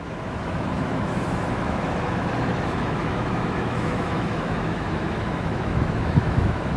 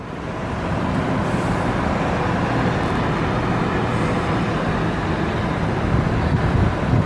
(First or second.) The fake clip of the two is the first